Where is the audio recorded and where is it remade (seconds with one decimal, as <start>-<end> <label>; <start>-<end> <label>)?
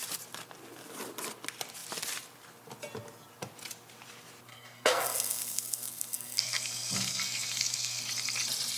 0.0-4.5 recorded; 4.5-8.0 remade; 8.0-8.8 recorded